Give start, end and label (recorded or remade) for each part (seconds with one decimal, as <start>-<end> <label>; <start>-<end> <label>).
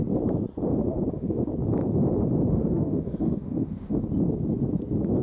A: 0.0-1.1 recorded; 1.1-1.5 remade; 1.5-2.5 recorded; 2.5-4.0 remade; 4.0-5.2 recorded